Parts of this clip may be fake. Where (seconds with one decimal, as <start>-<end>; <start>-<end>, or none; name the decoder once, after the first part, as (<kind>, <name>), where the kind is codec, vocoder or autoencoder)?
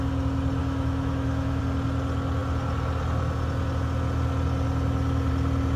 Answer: 0.6-1.6 (autoencoder, DAC-VAE)